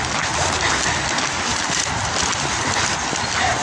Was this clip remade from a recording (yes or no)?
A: no